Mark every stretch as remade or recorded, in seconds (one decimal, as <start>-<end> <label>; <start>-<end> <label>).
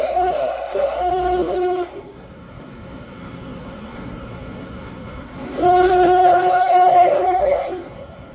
0.0-8.3 remade